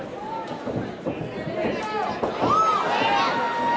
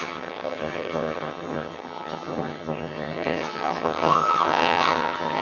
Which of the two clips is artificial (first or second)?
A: second